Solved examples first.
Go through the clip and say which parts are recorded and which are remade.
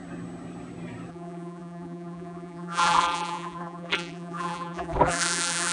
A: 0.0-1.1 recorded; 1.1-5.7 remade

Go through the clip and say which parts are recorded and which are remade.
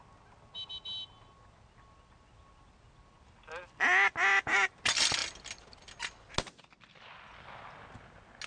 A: 0.0-8.5 recorded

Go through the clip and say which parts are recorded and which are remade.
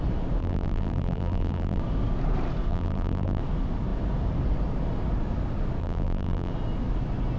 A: 0.0-0.4 recorded; 0.4-1.8 remade; 1.8-2.7 recorded; 2.7-3.4 remade; 3.4-5.8 recorded; 5.8-6.5 remade; 6.5-7.4 recorded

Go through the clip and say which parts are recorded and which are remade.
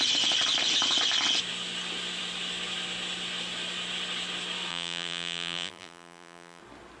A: 0.0-4.7 recorded; 4.7-6.6 remade; 6.6-7.0 recorded